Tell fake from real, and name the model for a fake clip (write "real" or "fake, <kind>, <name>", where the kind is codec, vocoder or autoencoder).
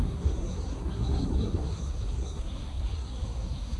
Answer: fake, codec, SNAC